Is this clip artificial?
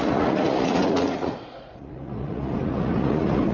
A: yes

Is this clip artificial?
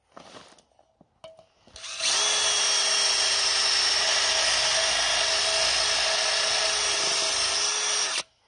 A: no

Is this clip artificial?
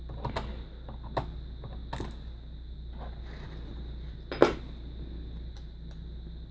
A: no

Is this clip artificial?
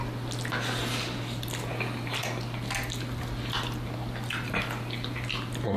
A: no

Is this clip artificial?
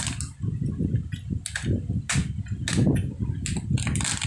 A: no